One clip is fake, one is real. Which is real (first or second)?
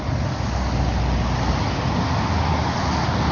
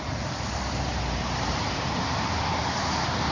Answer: first